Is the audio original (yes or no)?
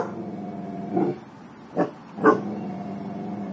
yes